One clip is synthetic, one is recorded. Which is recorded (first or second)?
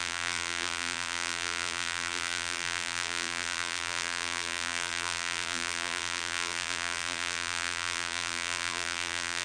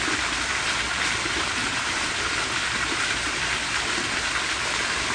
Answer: second